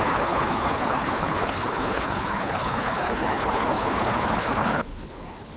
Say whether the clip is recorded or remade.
remade